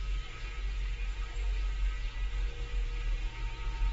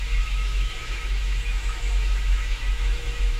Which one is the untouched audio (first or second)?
first